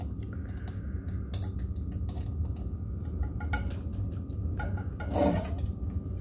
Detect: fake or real real